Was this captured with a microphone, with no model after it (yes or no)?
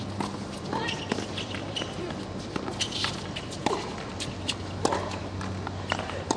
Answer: yes